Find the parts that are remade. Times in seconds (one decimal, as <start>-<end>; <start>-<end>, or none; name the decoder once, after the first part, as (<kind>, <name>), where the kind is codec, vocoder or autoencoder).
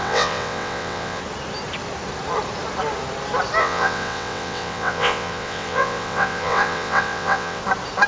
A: 0.0-1.2 (vocoder, WaveNeXt); 3.6-7.6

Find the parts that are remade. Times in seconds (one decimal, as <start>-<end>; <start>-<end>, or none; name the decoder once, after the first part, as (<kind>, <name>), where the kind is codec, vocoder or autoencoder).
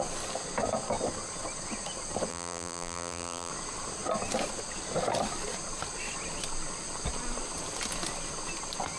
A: 2.3-3.5 (vocoder, BigVGAN v2)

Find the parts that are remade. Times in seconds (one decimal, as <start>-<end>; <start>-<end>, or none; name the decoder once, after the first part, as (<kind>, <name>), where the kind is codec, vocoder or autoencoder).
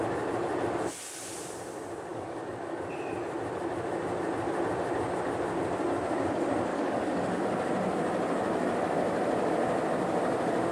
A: 2.1-2.8 (codec, DAC); 6.7-7.4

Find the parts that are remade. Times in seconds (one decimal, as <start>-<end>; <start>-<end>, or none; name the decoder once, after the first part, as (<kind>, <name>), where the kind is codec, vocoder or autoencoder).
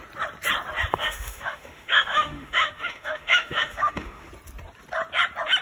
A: 0.9-4.3 (autoencoder, DAC-VAE)